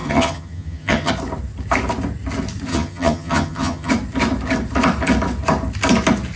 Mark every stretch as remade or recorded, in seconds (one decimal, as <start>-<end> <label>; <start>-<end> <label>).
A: 0.0-1.1 remade; 1.1-2.7 recorded; 2.7-3.9 remade; 3.9-6.4 recorded